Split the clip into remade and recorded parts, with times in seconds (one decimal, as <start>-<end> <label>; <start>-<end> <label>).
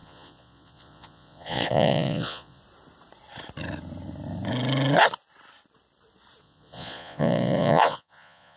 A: 0.0-2.6 remade; 2.6-6.4 recorded; 6.4-8.6 remade